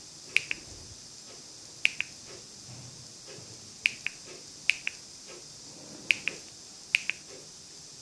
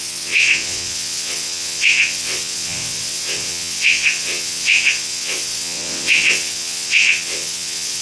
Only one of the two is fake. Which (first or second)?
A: second